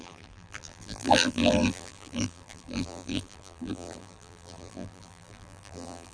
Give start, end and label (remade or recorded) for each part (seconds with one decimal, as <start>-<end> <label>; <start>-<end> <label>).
0.0-6.1 remade